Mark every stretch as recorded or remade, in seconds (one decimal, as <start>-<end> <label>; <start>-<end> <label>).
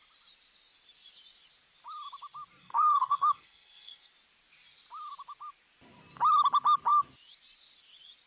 0.0-2.6 recorded; 2.6-4.1 remade; 4.1-8.3 recorded